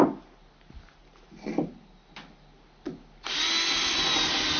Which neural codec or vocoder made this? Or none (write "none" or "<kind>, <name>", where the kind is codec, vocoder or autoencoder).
none